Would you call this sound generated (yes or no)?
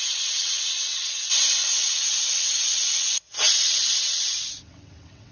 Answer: yes